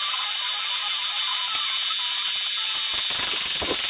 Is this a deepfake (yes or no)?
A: no